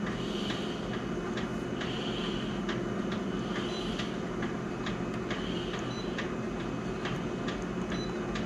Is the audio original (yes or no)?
yes